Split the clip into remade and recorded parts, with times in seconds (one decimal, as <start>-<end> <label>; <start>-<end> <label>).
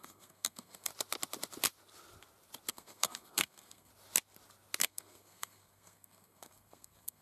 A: 0.0-0.9 remade; 0.9-2.7 recorded; 2.7-3.9 remade; 3.9-4.8 recorded; 4.8-7.2 remade